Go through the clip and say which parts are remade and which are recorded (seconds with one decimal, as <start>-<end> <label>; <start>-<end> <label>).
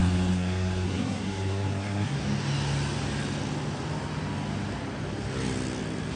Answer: 0.0-2.2 remade; 2.2-6.1 recorded